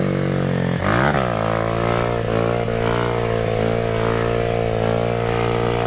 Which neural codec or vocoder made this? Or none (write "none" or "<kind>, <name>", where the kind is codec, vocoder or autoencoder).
none